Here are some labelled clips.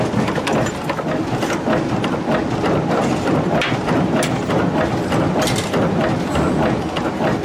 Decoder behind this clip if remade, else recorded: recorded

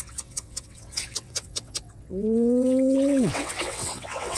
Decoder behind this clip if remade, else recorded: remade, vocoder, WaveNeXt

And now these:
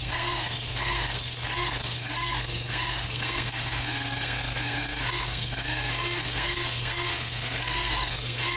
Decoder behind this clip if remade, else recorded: remade, codec, SNAC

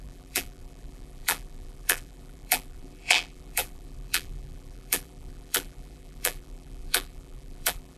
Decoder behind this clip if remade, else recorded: remade, vocoder, BigVGAN v2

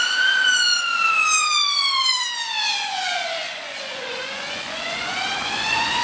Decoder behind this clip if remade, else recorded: remade, vocoder, Vocos